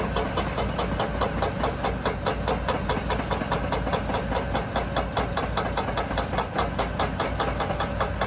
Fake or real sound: real